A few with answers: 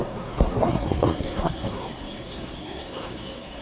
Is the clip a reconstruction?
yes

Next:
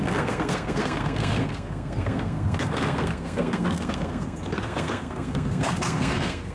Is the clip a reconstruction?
yes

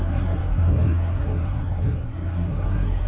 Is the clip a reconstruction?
yes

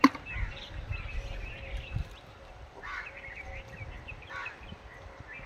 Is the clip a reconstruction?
no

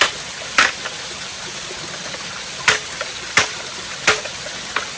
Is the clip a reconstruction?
no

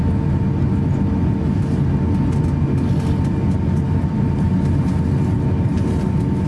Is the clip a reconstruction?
no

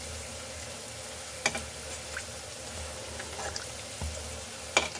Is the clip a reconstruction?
no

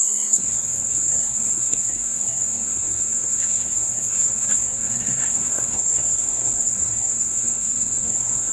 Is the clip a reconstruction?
yes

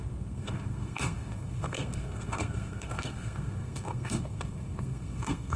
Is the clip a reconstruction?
yes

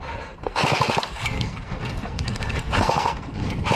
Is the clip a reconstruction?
yes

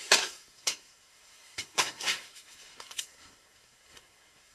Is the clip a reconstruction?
yes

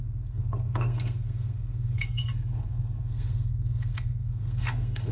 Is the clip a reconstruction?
yes